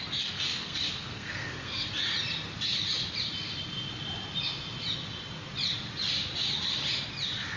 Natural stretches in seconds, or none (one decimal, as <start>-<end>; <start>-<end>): 0.0-0.5; 1.9-7.6